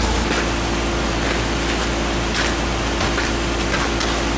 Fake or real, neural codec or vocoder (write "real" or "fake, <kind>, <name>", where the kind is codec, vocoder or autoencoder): real